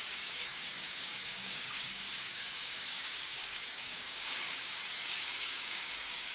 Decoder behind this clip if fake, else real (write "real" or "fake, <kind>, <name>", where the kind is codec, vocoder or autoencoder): fake, codec, DAC